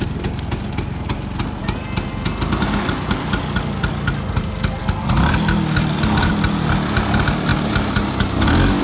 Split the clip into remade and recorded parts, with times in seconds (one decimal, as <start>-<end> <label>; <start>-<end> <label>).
0.0-8.8 recorded